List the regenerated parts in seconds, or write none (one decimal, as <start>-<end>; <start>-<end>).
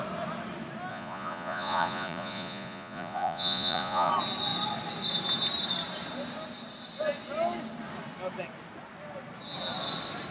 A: 0.9-4.1